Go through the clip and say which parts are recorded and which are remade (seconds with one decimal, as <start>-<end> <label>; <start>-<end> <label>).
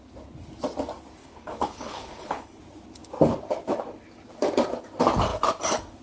0.0-1.2 recorded; 1.2-2.6 remade; 2.6-6.0 recorded